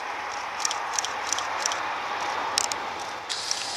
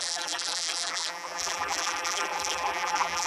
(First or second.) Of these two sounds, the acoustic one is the first